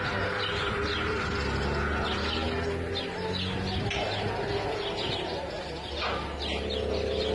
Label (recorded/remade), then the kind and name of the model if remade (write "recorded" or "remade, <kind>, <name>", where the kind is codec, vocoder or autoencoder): recorded